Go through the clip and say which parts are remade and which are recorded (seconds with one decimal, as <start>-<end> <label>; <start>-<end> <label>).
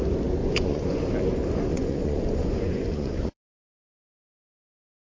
0.0-0.4 recorded; 0.4-1.0 remade; 1.0-1.7 recorded; 1.7-4.5 remade; 4.5-5.0 recorded